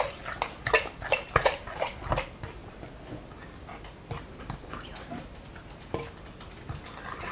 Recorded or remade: recorded